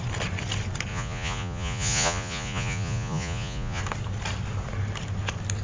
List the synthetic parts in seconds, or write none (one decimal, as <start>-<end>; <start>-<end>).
0.9-3.8